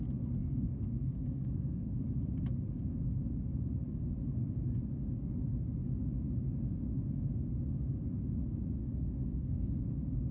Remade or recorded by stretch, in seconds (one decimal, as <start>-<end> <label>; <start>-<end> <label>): 0.0-0.4 recorded; 0.4-2.1 remade; 2.1-8.8 recorded; 8.8-9.7 remade; 9.7-10.3 recorded

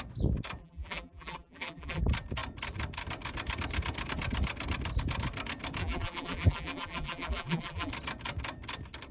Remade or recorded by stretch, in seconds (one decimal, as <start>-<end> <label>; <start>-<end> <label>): 0.0-0.6 recorded; 0.6-2.0 remade; 2.0-5.8 recorded; 5.8-7.9 remade; 7.9-9.1 recorded

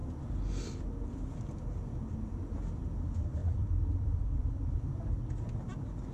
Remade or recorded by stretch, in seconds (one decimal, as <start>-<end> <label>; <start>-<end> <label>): 0.0-3.4 recorded; 3.4-5.2 remade; 5.2-6.1 recorded

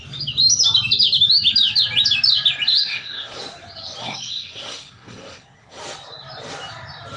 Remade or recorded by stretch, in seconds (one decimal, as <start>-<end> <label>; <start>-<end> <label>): 0.0-2.8 recorded; 2.8-3.4 remade; 3.4-4.0 recorded; 4.0-5.8 remade; 5.8-7.2 recorded

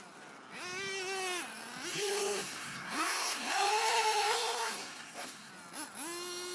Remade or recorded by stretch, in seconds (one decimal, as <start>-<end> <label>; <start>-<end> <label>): 0.0-1.9 recorded; 1.9-5.5 remade; 5.5-6.5 recorded

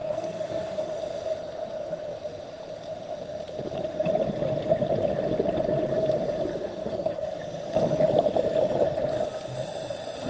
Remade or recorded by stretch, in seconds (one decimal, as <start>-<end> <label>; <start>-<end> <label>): 0.0-0.8 remade; 0.8-6.5 recorded; 6.5-7.3 remade; 7.3-10.3 recorded

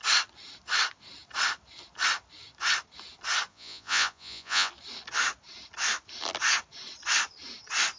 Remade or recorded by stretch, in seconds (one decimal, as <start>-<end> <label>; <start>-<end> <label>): 0.0-3.5 recorded; 3.5-4.7 remade; 4.7-8.0 recorded

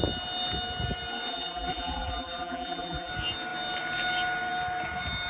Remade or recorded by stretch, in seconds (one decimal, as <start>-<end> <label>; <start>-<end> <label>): 0.0-1.3 recorded; 1.3-3.1 remade; 3.1-5.3 recorded